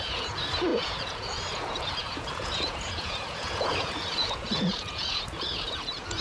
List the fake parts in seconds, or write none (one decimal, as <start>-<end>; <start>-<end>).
0.0-6.2